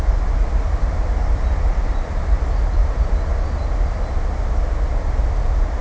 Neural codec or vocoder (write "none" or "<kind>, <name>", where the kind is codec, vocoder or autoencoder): none